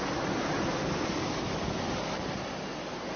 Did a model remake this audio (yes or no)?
no